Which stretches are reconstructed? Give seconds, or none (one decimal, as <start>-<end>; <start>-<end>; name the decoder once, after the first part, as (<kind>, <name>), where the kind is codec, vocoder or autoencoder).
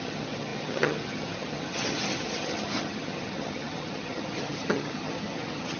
0.0-5.8 (vocoder, HiFi-GAN)